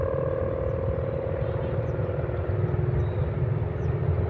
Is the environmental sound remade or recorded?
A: recorded